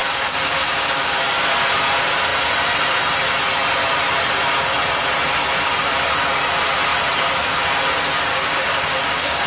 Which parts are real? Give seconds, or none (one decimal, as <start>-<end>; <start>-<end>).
1.4-8.3